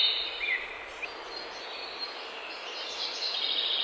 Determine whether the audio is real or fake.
real